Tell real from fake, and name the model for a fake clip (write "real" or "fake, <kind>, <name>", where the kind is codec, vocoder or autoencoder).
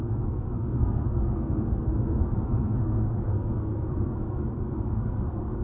fake, codec, SNAC